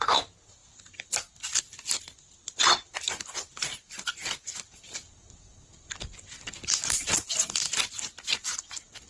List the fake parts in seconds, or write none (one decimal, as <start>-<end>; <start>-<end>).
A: none